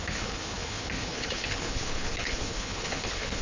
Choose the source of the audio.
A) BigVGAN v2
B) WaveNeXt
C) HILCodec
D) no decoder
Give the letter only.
C